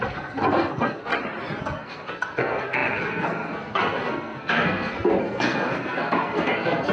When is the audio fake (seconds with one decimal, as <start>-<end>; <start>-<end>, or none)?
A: 0.0-1.1; 1.6-6.9